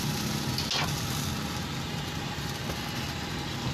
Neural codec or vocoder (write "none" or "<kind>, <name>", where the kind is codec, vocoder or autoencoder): none